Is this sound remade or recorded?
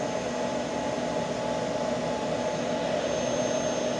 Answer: recorded